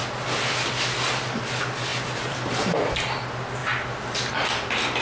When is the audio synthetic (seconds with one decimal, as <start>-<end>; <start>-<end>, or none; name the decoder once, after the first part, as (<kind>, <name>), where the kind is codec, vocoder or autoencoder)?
1.9-2.9 (vocoder, BigVGAN v2)